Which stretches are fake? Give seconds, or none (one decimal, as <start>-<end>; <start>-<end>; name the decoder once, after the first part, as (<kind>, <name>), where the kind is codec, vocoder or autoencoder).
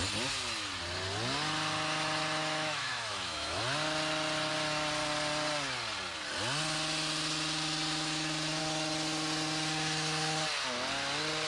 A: 2.4-3.6 (autoencoder, DAC-VAE)